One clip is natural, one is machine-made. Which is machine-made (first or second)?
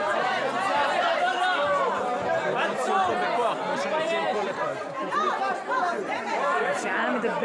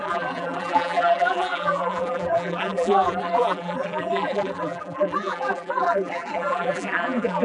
second